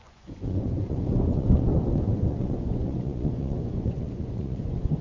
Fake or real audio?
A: fake